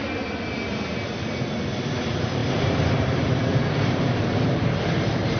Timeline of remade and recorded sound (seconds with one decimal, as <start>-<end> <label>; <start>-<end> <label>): 0.0-2.4 recorded; 2.4-5.4 remade